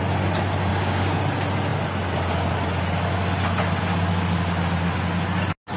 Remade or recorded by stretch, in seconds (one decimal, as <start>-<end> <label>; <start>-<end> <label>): 0.0-0.7 recorded; 0.7-1.2 remade; 1.2-5.8 recorded